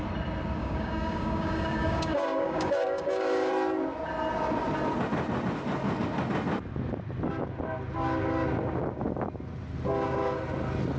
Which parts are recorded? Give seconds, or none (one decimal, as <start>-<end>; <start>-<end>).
0.0-0.6; 3.5-11.0